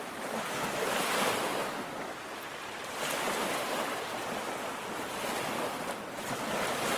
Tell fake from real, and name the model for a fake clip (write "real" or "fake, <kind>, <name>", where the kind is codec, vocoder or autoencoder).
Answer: real